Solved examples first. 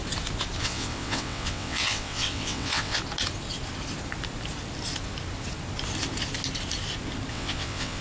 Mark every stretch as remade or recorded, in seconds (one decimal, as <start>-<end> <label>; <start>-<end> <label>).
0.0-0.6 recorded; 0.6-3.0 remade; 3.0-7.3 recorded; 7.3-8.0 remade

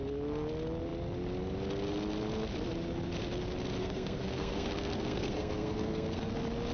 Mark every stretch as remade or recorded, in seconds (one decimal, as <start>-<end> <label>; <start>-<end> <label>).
0.0-3.8 recorded; 3.8-6.3 remade; 6.3-6.7 recorded

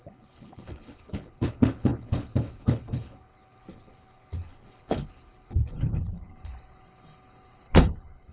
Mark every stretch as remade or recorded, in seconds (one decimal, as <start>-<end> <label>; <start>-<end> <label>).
0.0-8.3 remade

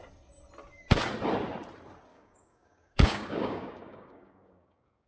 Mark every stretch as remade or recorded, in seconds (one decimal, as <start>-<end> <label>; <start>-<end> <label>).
0.0-2.1 recorded; 2.1-5.1 remade

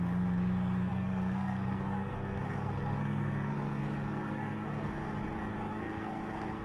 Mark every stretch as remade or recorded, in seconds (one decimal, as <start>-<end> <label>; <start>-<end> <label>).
0.0-0.9 recorded; 0.9-4.9 remade; 4.9-5.7 recorded; 5.7-6.6 remade